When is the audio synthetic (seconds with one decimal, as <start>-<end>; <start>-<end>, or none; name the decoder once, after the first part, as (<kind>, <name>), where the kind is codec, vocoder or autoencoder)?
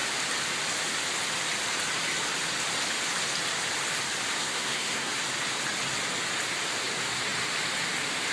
4.4-5.1 (codec, SNAC)